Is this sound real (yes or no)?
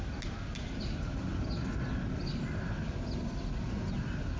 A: yes